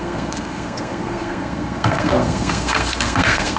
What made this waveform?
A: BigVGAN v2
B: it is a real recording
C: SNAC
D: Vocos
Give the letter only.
C